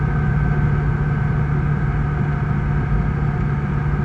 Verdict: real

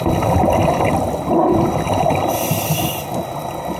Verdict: real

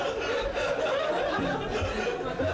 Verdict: real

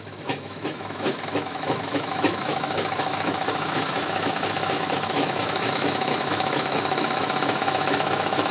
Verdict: fake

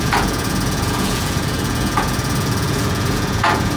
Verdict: fake